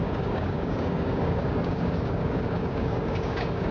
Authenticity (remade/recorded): remade